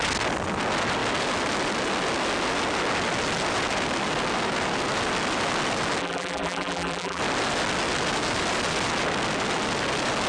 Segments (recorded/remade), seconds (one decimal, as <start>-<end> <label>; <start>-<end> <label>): 0.0-6.0 recorded; 6.0-7.2 remade; 7.2-10.3 recorded